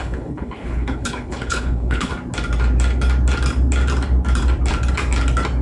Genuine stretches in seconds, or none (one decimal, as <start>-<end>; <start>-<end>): 2.1-5.6